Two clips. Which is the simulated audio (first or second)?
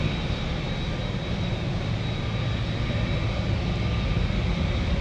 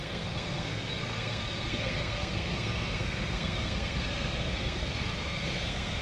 second